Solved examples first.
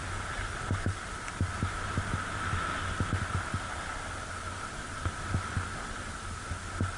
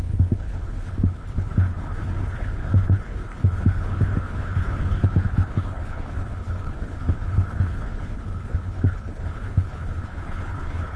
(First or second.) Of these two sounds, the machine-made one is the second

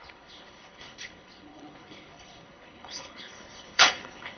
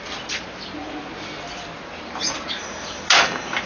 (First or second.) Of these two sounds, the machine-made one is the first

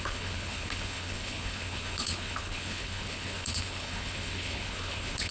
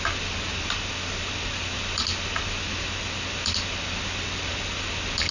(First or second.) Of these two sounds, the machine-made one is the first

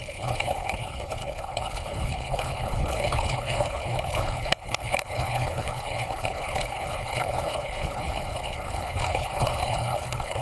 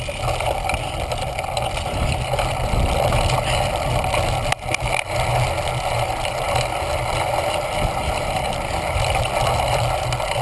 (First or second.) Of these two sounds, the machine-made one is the first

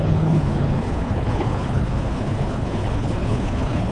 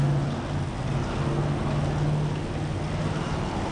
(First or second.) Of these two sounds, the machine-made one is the first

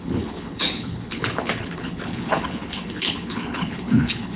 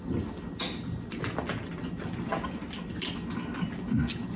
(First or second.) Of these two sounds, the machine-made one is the first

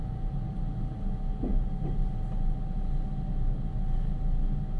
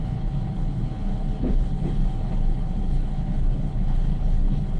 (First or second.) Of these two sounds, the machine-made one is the second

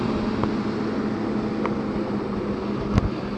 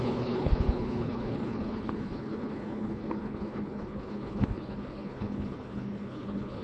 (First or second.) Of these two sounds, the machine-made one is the second